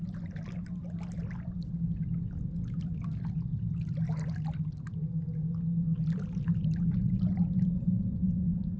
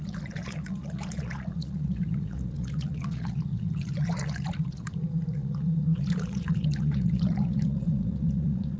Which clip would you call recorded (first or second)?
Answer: first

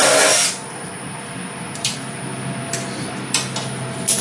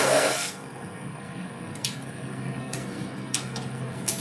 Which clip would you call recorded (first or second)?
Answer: first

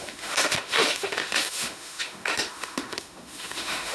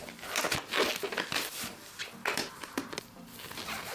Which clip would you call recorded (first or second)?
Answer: second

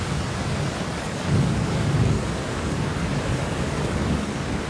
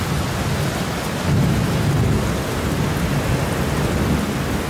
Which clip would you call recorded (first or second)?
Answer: second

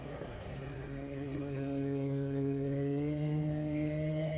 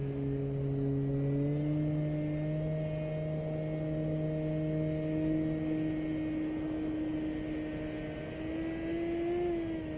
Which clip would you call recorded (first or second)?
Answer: second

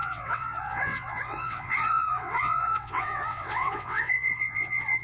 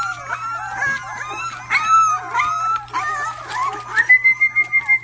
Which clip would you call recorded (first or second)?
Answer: second